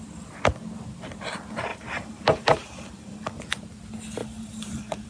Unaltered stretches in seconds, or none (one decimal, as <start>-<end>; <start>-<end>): 0.0-1.7; 3.4-4.2